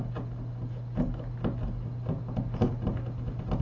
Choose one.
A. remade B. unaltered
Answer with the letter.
B